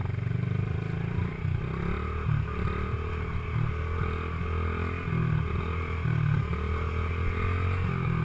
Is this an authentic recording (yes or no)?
yes